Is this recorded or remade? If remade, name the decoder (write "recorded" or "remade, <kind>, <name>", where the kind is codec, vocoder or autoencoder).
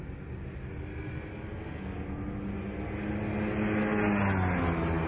recorded